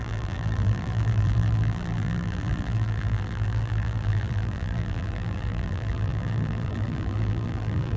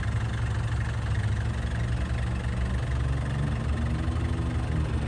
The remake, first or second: first